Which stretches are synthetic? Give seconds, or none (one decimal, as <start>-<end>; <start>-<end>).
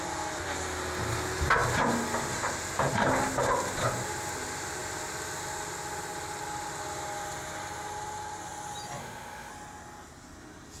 9.0-9.5